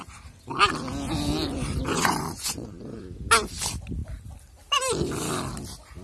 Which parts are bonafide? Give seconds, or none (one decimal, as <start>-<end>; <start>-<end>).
0.0-1.9; 3.0-6.0